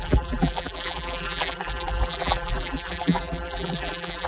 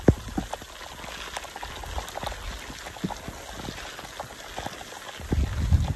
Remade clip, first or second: first